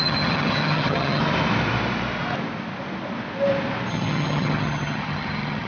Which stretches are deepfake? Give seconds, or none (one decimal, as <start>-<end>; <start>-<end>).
0.0-1.2; 3.9-5.7